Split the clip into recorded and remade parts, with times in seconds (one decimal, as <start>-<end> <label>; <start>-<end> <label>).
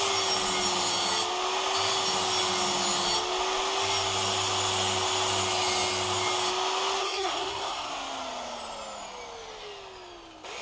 0.0-7.0 recorded; 7.0-7.9 remade; 7.9-10.6 recorded